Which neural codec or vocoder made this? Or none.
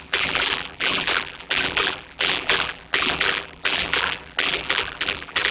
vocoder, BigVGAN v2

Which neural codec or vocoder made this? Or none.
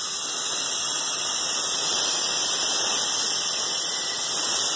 none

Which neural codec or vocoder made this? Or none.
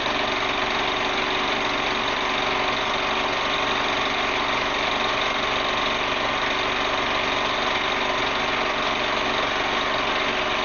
none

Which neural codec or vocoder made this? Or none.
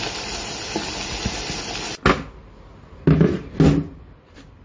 none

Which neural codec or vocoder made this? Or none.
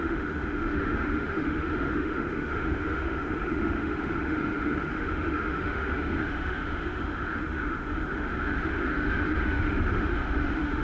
autoencoder, DAC-VAE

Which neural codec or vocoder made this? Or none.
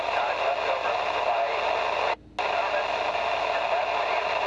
none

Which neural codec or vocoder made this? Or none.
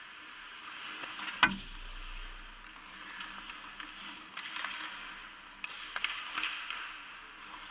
none